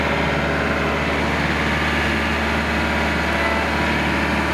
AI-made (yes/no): no